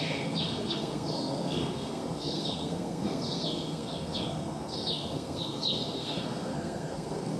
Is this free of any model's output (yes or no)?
no